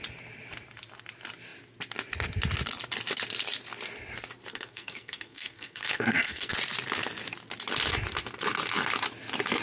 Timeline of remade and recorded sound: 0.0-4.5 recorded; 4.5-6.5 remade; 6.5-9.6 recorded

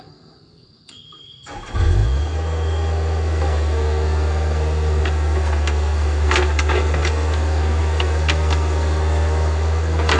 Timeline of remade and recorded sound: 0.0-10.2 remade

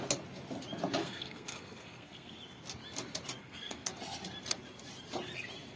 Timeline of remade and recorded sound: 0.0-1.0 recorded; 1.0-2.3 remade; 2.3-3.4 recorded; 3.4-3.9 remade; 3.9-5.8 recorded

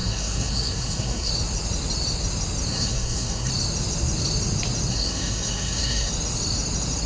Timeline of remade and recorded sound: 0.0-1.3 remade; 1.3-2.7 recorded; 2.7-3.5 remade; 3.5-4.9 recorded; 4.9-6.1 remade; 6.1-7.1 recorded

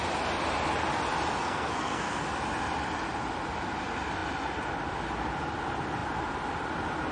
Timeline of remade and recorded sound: 0.0-1.4 recorded; 1.4-2.2 remade; 2.2-7.1 recorded